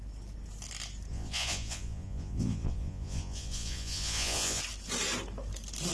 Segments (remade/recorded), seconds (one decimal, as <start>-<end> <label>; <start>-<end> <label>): 0.0-1.1 recorded; 1.1-4.6 remade; 4.6-5.9 recorded